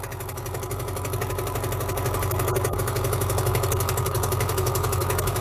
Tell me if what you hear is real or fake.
fake